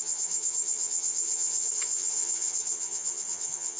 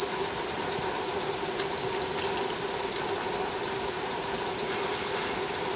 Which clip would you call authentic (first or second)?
second